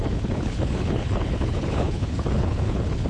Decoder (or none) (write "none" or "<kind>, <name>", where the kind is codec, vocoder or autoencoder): codec, HILCodec